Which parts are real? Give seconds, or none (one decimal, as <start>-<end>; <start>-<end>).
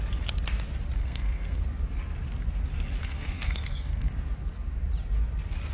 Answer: 0.0-1.0; 1.6-3.0; 4.1-5.7